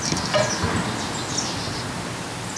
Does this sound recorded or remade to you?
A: recorded